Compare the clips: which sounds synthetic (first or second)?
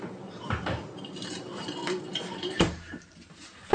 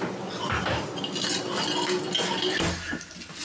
first